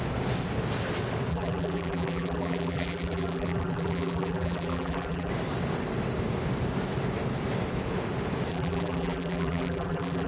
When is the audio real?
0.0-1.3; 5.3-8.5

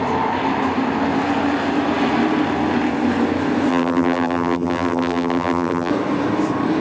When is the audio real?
0.0-3.7; 5.9-6.8

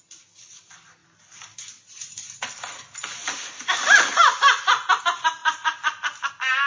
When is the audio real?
0.0-1.0; 5.0-5.4; 6.3-6.7

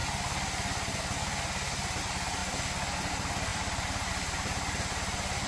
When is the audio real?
0.0-2.0; 2.4-3.1